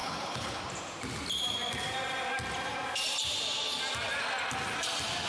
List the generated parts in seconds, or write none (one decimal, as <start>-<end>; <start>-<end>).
0.0-0.6